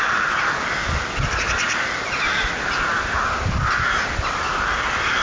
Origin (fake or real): real